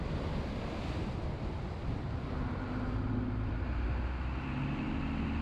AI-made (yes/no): no